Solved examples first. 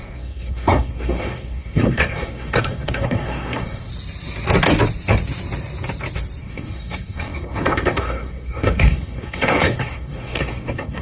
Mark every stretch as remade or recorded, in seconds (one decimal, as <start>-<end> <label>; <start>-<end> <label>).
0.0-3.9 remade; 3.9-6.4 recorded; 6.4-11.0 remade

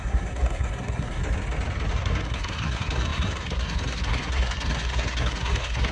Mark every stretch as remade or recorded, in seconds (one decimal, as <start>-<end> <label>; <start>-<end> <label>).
0.0-1.2 remade; 1.2-1.9 recorded; 1.9-5.9 remade

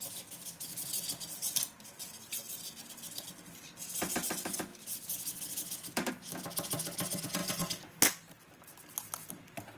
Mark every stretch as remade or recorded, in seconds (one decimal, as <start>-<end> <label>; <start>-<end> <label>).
0.0-9.8 recorded